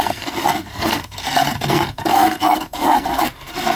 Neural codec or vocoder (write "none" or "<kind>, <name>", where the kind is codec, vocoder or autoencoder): codec, SNAC